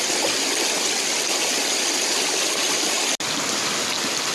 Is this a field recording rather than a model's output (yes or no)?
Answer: yes